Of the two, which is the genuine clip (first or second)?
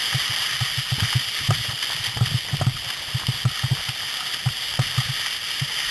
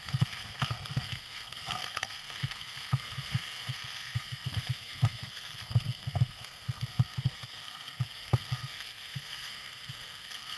first